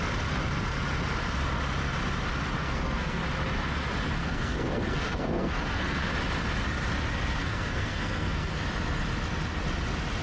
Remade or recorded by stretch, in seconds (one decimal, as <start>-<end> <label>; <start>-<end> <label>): 0.0-2.6 recorded; 2.6-3.2 remade; 3.2-4.2 recorded; 4.2-6.0 remade; 6.0-7.4 recorded; 7.4-8.5 remade; 8.5-10.2 recorded